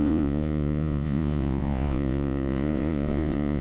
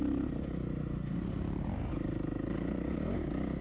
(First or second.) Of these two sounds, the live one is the second